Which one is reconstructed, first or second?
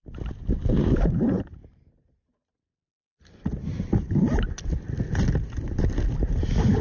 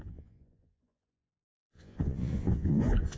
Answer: second